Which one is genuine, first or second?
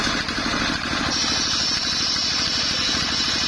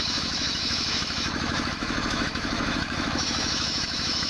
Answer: first